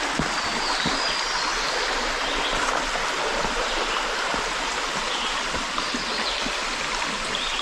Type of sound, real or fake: real